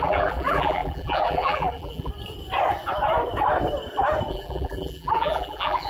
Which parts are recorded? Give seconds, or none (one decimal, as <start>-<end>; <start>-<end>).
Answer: 2.1-4.3